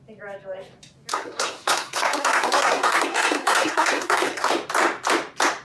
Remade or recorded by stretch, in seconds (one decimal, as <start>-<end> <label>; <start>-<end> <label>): 0.0-1.1 recorded; 1.1-4.5 remade; 4.5-5.6 recorded